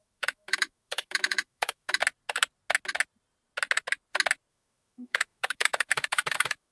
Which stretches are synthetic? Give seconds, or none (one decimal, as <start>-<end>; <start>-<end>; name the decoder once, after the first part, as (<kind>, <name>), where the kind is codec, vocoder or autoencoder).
0.0-2.0 (autoencoder, DAC-VAE); 4.5-6.7